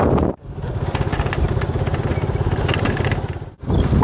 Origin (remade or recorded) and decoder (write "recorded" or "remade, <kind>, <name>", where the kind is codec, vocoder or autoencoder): recorded